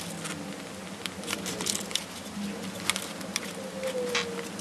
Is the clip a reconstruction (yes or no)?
no